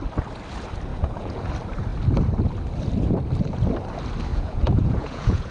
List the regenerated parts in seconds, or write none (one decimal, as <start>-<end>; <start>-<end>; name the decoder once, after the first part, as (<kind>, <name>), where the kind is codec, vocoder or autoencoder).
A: 0.9-1.5 (vocoder, Vocos); 4.3-5.5